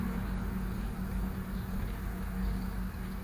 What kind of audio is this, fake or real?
fake